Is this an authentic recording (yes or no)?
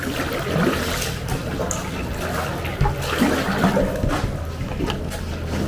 yes